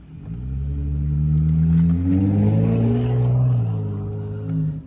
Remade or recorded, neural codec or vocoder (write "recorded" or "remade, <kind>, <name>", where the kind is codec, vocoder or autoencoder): recorded